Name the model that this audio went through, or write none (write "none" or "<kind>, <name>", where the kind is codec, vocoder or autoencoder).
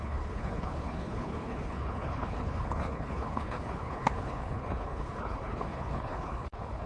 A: codec, HILCodec